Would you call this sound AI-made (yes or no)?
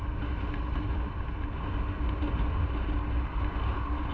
no